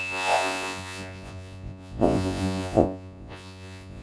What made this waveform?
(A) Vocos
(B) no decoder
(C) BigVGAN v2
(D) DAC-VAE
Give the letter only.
A